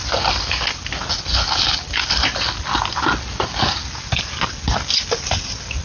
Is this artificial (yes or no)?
no